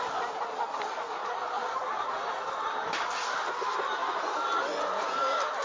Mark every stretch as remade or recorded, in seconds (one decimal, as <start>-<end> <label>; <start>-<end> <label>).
0.0-5.6 recorded